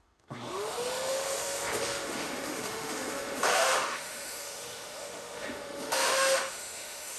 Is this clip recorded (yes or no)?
no